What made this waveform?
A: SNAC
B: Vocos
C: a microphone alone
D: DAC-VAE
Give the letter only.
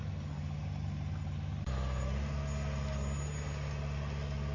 C